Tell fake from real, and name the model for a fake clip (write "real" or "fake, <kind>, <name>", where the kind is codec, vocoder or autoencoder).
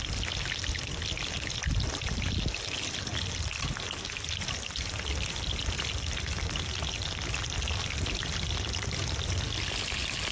real